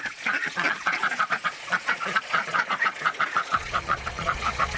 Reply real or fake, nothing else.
fake